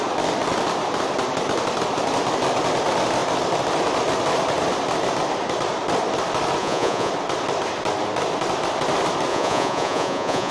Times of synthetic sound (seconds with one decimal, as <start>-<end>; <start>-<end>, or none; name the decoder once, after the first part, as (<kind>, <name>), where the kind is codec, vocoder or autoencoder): 6.6-7.1 (vocoder, Vocos); 9.3-10.5